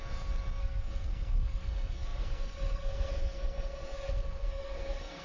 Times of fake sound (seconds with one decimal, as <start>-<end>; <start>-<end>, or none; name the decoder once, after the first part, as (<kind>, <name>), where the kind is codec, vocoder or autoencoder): 0.6-5.2 (codec, SNAC)